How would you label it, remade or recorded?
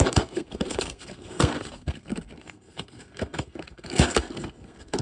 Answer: remade